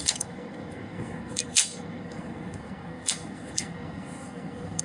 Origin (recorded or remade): remade